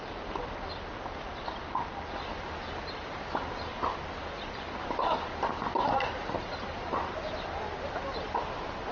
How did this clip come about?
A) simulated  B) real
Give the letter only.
B